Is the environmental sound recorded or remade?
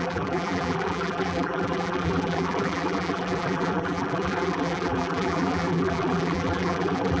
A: remade